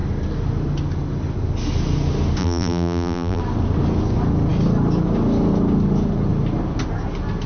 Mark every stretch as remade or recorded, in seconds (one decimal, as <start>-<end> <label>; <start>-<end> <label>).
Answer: 0.0-2.4 recorded; 2.4-3.4 remade; 3.4-7.5 recorded